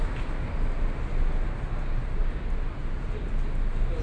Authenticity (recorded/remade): recorded